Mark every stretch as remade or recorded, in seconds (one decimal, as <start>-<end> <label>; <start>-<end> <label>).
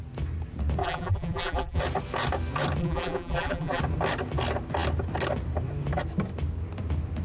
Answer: 0.0-0.8 recorded; 0.8-1.8 remade; 1.8-2.8 recorded; 2.8-3.8 remade; 3.8-7.2 recorded